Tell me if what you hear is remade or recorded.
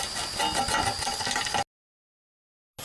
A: recorded